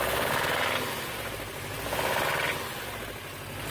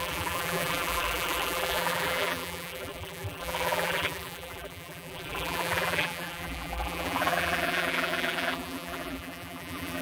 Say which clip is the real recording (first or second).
first